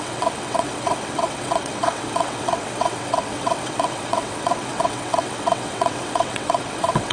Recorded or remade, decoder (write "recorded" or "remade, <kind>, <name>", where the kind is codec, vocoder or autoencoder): remade, vocoder, WaveNeXt